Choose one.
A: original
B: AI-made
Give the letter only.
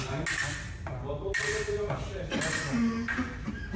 A